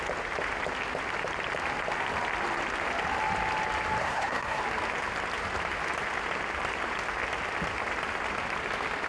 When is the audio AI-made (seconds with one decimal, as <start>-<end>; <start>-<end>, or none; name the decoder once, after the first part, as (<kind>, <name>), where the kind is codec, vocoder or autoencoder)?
4.0-4.6 (codec, SNAC)